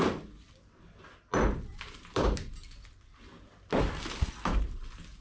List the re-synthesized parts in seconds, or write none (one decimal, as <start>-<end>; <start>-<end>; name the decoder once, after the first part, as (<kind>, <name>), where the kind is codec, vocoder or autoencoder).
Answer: 1.7-3.5 (vocoder, BigVGAN v2)